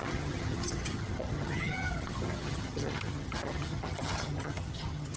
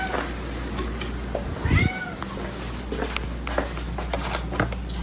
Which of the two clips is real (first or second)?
second